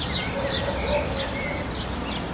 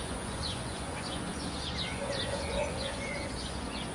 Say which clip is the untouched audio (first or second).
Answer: first